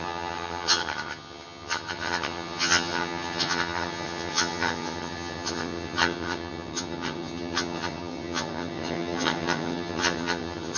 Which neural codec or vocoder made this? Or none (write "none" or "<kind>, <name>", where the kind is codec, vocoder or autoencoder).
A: vocoder, HiFi-GAN